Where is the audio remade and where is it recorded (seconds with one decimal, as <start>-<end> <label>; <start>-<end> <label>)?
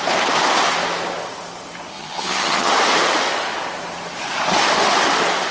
0.0-1.9 recorded; 1.9-2.7 remade; 2.7-5.5 recorded